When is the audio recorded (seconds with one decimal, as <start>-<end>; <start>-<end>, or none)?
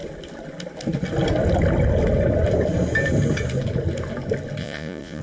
0.0-4.6